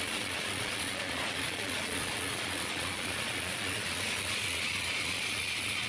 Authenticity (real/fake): fake